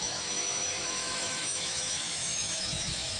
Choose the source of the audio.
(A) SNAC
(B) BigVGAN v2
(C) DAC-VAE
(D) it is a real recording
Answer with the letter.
C